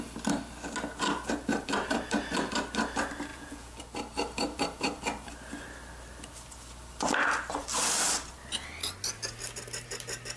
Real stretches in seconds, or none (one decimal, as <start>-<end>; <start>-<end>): 0.0-3.3; 3.8-10.4